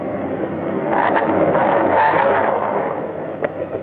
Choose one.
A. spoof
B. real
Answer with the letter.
A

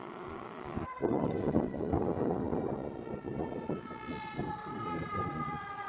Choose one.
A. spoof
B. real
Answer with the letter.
A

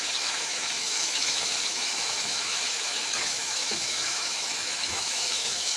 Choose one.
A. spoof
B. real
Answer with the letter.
A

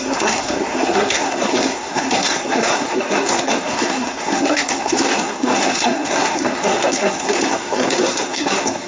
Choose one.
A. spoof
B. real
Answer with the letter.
A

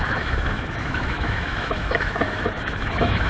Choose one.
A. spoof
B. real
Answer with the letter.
A